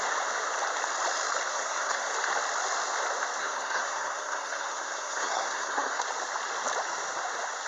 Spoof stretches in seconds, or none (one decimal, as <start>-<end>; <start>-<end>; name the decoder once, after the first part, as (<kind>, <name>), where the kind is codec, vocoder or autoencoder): 1.5-2.1 (codec, SNAC); 3.4-6.0